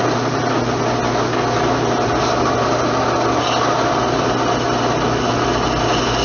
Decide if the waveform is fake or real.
real